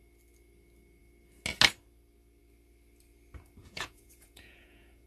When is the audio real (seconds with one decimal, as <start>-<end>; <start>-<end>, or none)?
0.0-3.6